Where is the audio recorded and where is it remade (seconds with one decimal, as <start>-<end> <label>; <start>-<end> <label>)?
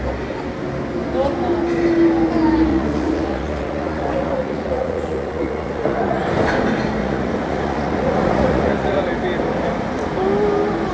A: 0.0-2.7 recorded; 2.7-6.2 remade; 6.2-7.0 recorded; 7.0-9.0 remade; 9.0-10.9 recorded